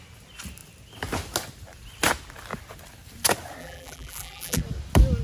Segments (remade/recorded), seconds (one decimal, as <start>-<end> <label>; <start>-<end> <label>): 0.0-3.6 recorded; 3.6-4.6 remade; 4.6-5.2 recorded